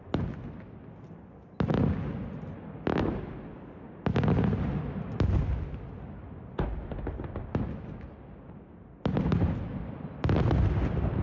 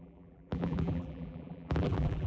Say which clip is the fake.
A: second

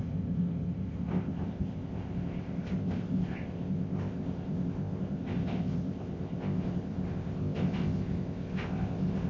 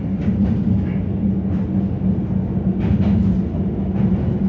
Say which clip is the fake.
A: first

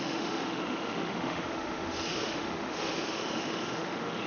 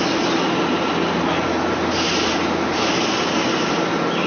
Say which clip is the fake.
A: first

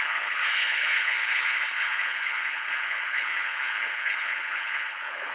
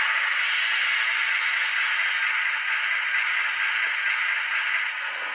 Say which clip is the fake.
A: first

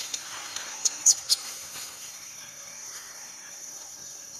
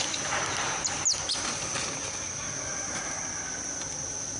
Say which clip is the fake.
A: first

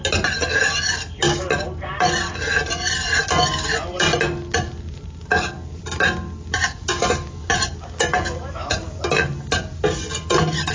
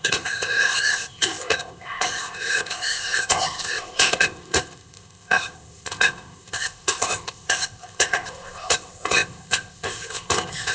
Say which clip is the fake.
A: second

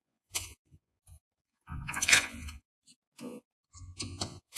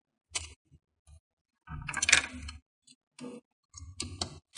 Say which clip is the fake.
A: first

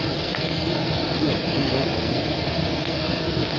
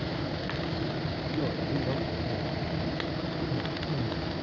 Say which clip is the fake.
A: first